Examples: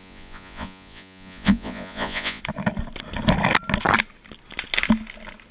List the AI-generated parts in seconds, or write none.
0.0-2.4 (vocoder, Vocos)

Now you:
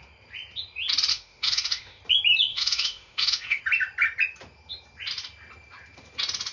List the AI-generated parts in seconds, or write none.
1.1-2.0 (autoencoder, DAC-VAE); 2.5-3.6

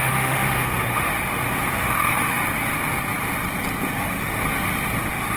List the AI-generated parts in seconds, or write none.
0.0-1.1 (autoencoder, DAC-VAE); 1.7-2.4; 3.8-4.4; 5.0-5.4